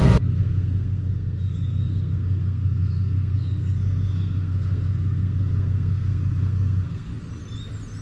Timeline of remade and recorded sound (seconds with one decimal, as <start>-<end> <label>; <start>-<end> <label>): 0.0-7.1 remade; 7.1-8.0 recorded